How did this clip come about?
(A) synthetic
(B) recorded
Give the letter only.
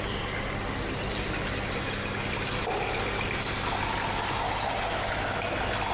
B